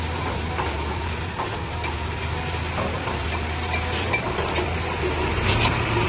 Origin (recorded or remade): recorded